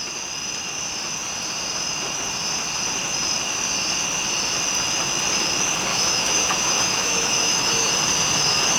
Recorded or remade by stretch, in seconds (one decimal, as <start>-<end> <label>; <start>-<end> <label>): 0.0-5.9 recorded; 5.9-7.9 remade; 7.9-8.8 recorded